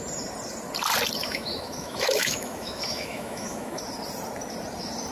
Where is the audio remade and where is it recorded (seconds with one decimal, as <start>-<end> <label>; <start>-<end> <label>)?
0.0-1.2 recorded; 1.2-3.8 remade; 3.8-5.1 recorded